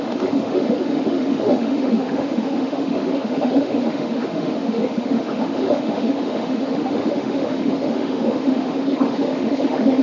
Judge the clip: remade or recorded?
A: remade